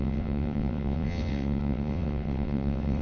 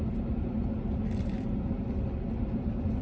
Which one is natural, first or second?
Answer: second